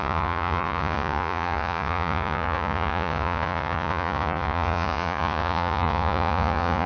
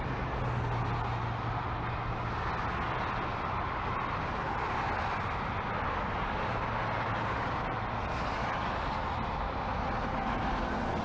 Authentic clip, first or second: second